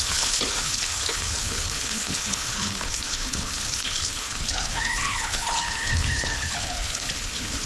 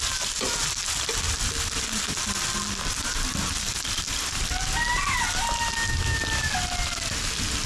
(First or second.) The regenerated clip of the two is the first